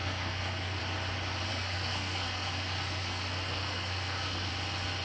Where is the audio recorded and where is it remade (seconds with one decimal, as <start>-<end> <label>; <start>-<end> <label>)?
0.0-0.8 remade; 0.8-1.5 recorded; 1.5-4.5 remade; 4.5-5.0 recorded